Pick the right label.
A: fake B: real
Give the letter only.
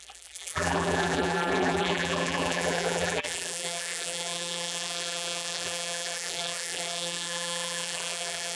A